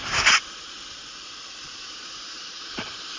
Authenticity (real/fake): fake